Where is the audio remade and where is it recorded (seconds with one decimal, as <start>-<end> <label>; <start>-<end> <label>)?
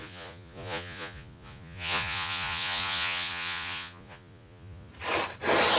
0.0-4.9 remade; 4.9-5.8 recorded